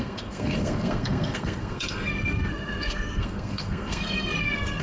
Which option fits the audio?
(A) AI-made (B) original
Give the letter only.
A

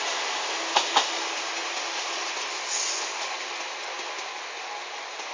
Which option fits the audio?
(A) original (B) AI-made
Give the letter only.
A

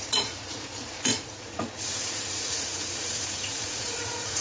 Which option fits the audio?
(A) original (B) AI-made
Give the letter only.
B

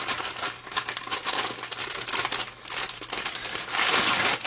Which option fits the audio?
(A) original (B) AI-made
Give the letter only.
A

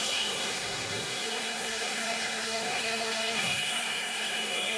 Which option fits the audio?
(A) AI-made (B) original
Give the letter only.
A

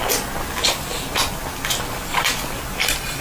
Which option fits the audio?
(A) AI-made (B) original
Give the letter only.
B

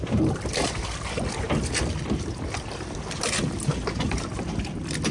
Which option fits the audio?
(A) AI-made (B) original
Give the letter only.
B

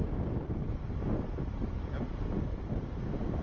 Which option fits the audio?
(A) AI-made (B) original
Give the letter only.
B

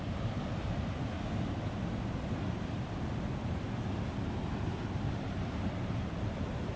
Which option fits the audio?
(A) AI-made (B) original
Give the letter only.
B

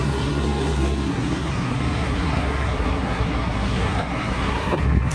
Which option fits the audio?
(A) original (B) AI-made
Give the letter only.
B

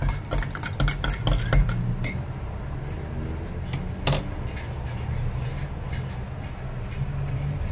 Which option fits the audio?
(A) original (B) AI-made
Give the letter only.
A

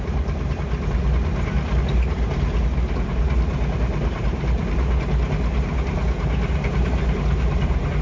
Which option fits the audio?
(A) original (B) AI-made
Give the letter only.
A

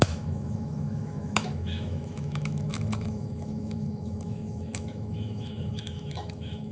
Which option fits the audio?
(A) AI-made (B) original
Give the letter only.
A